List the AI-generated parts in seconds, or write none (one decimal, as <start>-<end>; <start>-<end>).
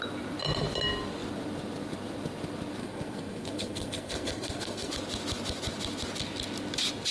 2.8-4.9